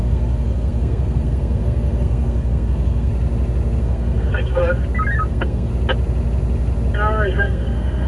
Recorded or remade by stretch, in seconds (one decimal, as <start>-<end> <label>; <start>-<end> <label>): 0.0-3.1 remade; 3.1-3.8 recorded; 3.8-4.6 remade; 4.6-5.3 recorded; 5.3-5.7 remade; 5.7-7.4 recorded; 7.4-8.1 remade